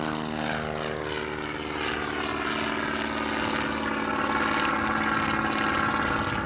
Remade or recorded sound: recorded